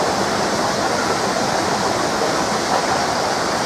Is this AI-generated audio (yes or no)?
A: no